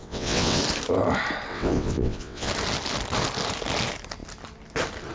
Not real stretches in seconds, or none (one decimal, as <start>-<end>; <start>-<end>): 0.0-0.6; 1.5-2.5